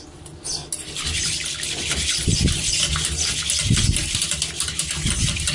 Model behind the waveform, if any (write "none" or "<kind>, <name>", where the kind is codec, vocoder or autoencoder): none